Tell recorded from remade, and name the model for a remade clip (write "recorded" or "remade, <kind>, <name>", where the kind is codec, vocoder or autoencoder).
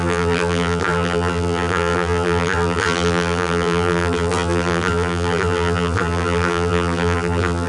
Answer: remade, vocoder, BigVGAN v2